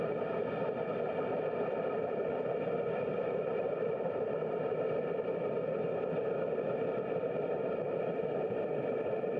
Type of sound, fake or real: fake